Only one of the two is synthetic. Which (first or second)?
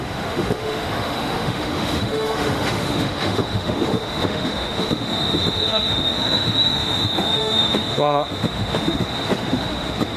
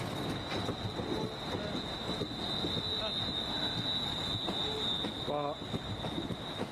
first